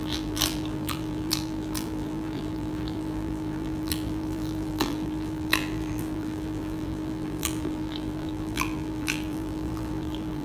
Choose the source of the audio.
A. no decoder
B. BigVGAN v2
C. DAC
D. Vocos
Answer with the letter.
B